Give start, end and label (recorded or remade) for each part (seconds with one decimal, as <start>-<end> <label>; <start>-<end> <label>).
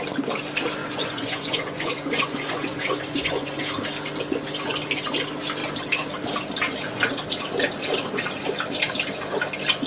0.0-0.8 recorded; 0.8-3.6 remade; 3.6-9.9 recorded